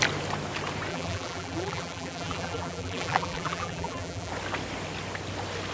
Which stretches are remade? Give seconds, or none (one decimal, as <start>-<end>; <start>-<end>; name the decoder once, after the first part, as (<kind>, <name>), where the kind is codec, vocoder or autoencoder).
0.9-4.3 (vocoder, BigVGAN v2)